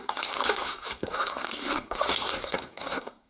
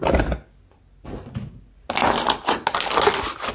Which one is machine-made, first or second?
first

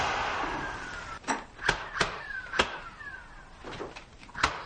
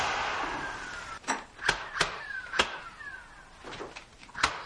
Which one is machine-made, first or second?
first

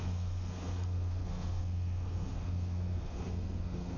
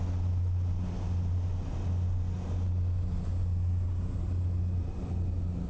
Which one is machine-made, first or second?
first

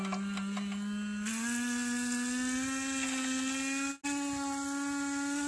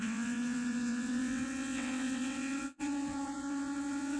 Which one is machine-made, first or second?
second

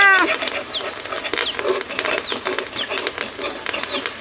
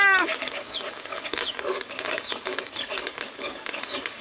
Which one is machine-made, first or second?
second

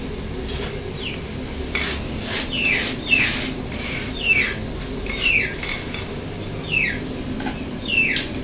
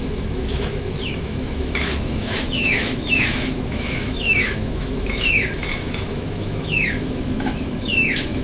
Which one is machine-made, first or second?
second